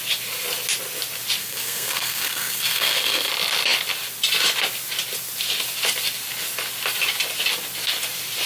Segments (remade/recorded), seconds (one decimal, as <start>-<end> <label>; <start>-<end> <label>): 0.0-1.4 recorded; 1.4-3.3 remade; 3.3-8.5 recorded